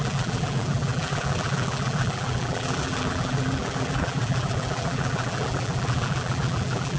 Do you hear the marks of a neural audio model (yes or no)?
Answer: yes